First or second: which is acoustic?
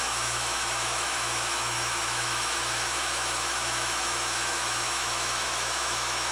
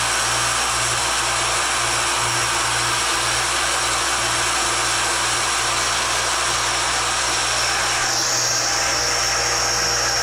second